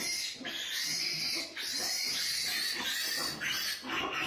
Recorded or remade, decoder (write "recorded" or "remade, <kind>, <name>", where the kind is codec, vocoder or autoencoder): recorded